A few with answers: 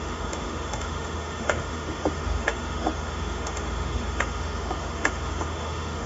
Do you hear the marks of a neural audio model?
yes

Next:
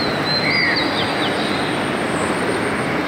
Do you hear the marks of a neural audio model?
no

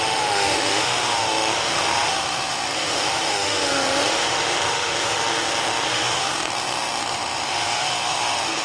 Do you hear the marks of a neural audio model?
yes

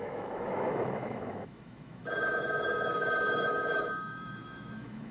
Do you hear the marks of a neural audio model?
yes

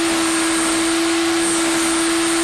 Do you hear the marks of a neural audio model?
no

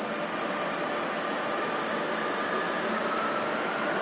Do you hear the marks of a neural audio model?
no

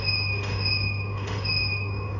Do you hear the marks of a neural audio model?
yes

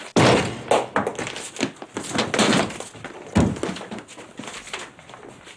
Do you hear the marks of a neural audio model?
no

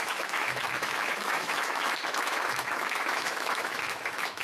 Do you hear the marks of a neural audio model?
yes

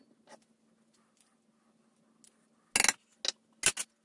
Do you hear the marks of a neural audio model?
no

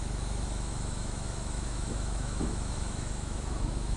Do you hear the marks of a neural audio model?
yes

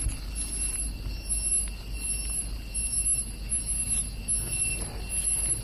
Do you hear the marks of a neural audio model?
no